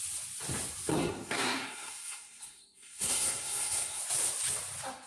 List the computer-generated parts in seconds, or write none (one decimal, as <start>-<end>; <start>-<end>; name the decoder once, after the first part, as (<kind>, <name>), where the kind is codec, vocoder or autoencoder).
0.9-4.0 (codec, SNAC)

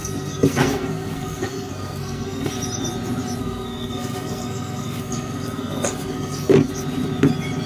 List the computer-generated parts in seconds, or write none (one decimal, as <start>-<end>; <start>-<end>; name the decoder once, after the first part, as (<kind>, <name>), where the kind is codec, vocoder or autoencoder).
0.0-2.5 (codec, SNAC); 3.4-6.7

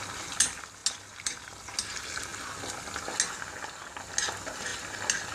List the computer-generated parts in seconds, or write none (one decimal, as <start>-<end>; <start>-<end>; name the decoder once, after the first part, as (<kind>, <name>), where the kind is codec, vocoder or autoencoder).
none

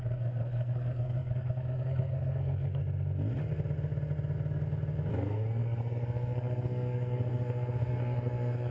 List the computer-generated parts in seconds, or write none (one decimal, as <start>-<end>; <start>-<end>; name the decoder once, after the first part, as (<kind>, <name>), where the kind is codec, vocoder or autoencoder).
0.0-2.8 (codec, SNAC); 5.1-8.7